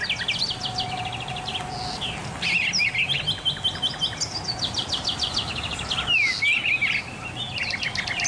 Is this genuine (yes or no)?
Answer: yes